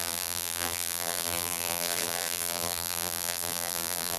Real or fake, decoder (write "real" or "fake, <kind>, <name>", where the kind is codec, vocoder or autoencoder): fake, vocoder, BigVGAN v2